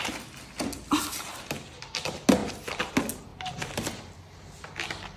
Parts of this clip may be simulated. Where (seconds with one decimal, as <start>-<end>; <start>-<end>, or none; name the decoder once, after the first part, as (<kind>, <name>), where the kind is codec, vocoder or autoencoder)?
none